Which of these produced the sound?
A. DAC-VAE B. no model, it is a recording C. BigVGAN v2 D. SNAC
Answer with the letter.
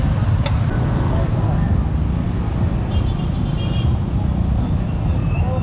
B